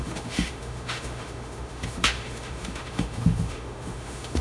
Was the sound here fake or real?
fake